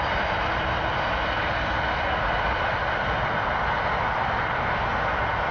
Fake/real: real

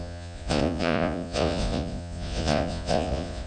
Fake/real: fake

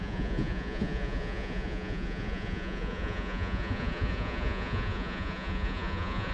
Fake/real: fake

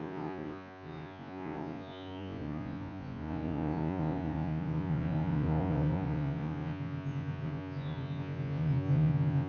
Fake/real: fake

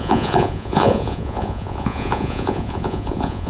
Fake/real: fake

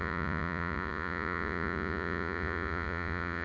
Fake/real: fake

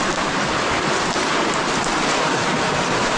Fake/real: real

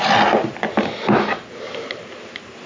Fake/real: real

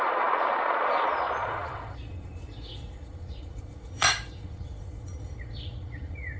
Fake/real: fake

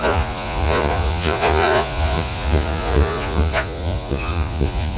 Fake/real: fake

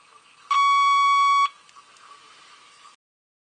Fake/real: real